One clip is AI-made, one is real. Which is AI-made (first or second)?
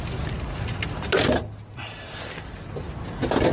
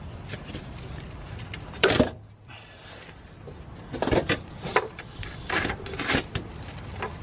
second